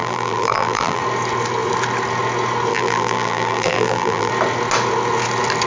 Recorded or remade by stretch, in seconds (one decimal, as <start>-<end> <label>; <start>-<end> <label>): 0.0-1.0 remade; 1.0-2.7 recorded; 2.7-4.3 remade; 4.3-5.7 recorded